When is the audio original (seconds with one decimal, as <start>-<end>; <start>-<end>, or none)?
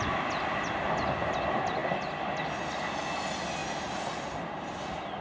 0.0-5.2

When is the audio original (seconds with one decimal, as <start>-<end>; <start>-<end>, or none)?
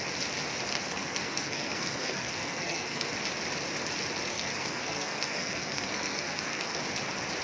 0.0-0.7; 3.1-4.3; 6.8-7.4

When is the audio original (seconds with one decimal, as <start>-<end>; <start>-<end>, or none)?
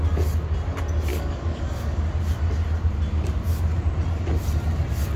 0.0-1.1; 2.1-5.2